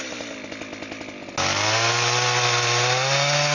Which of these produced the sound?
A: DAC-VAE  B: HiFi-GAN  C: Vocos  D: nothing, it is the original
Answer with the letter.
D